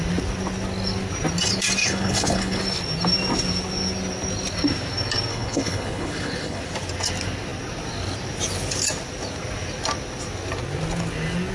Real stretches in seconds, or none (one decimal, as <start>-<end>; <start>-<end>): 0.0-1.8; 2.6-5.3; 6.6-11.5